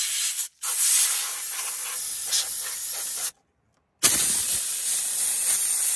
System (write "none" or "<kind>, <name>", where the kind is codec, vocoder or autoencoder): none